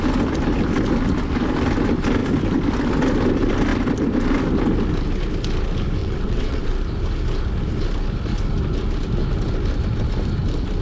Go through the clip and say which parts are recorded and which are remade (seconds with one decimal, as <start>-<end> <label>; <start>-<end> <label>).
0.0-6.0 recorded; 6.0-6.7 remade; 6.7-10.8 recorded